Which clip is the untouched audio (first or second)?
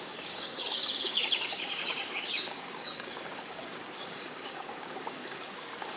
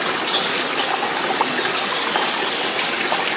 second